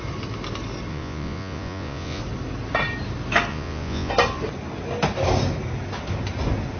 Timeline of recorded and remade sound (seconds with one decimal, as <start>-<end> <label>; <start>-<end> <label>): 0.0-0.9 recorded; 0.9-2.2 remade; 2.2-3.5 recorded; 3.5-4.1 remade; 4.1-6.8 recorded

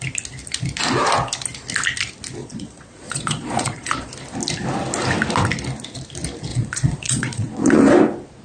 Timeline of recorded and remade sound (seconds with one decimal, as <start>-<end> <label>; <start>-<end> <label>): 0.0-2.4 recorded; 2.4-4.1 remade; 4.1-6.5 recorded; 6.5-7.8 remade; 7.8-8.4 recorded

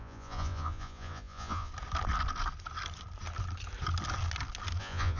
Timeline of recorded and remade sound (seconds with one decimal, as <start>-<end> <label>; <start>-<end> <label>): 0.0-1.7 remade; 1.7-4.8 recorded; 4.8-5.2 remade

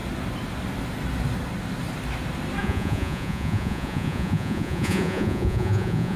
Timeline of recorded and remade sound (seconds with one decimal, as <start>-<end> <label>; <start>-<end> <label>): 0.0-2.6 recorded; 2.6-6.2 remade

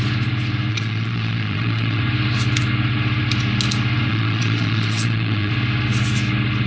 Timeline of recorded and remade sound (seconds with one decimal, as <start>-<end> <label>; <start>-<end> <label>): 0.0-0.7 recorded; 0.7-2.0 remade; 2.0-4.1 recorded; 4.1-5.5 remade; 5.5-6.7 recorded